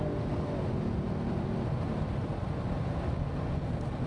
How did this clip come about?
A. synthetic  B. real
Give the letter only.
B